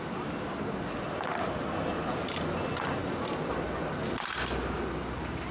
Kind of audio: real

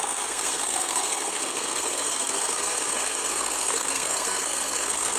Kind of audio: fake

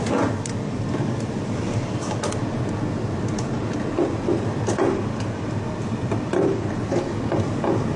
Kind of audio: real